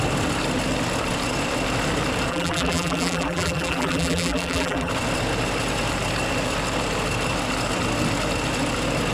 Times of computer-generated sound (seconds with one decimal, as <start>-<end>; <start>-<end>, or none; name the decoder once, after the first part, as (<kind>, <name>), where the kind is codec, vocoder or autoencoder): 2.3-4.9 (vocoder, BigVGAN v2)